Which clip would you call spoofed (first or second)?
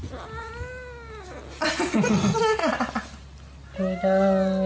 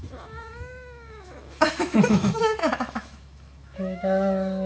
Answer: second